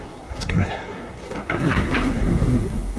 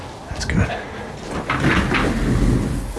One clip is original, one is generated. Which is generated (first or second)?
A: first